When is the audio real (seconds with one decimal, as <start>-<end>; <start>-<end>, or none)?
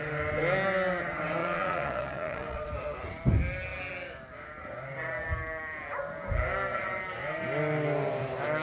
0.0-1.4; 2.7-8.6